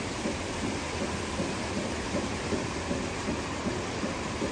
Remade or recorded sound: recorded